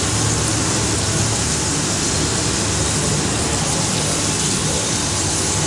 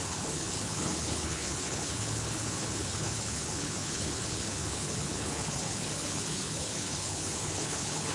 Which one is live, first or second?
first